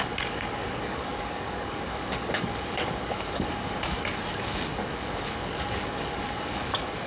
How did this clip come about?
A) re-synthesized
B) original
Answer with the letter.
A